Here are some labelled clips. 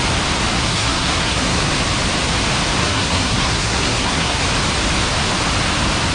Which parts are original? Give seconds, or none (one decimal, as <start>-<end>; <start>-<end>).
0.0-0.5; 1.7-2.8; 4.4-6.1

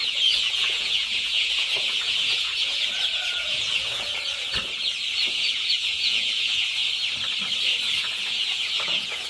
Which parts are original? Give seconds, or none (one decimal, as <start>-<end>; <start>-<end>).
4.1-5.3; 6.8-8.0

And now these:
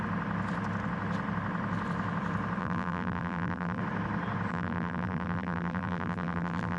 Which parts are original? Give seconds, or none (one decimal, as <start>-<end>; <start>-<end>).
0.0-2.6; 3.8-4.5

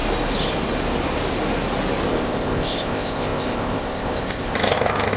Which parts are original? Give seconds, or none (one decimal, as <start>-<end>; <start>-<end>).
0.0-2.1

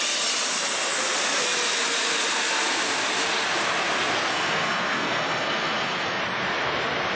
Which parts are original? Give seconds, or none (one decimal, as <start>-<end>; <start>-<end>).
0.0-4.3; 6.2-7.2

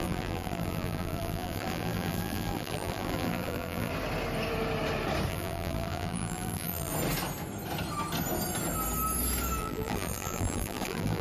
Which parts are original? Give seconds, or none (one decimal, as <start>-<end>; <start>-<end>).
3.9-5.3; 6.9-9.6